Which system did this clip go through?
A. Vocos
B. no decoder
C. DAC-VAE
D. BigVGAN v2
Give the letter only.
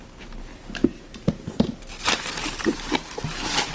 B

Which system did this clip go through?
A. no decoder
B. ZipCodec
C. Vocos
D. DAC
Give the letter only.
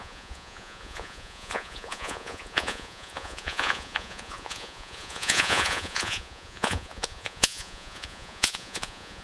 C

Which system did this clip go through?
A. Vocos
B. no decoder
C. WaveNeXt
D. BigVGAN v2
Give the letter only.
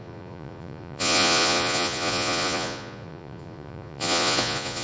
A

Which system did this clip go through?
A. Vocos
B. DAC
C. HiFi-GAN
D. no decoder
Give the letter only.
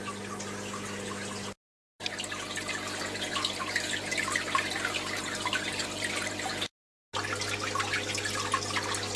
D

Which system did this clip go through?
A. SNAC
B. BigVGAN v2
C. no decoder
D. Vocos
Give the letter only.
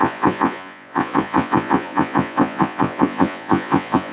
D